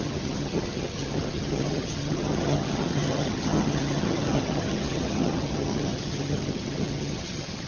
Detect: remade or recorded remade